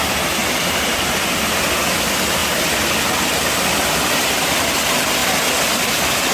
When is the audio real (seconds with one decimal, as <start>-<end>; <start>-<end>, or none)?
0.0-0.4; 1.1-6.3